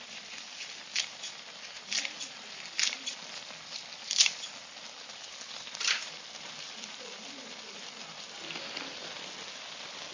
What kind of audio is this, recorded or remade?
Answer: remade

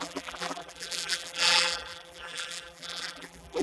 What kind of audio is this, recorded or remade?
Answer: remade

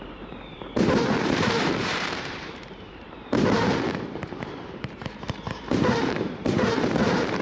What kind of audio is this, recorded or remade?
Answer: remade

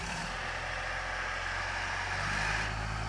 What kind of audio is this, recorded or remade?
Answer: recorded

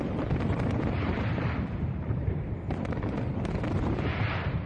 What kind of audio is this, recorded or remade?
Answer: remade